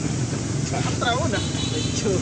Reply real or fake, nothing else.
real